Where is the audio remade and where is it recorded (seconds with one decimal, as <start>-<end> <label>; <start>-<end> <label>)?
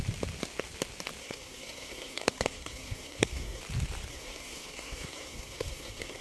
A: 0.0-1.2 recorded; 1.2-3.6 remade; 3.6-4.1 recorded; 4.1-6.2 remade